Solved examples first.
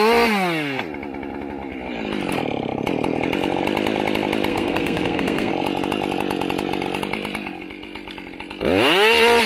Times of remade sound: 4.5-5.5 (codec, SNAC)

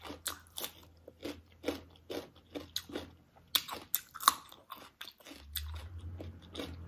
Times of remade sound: none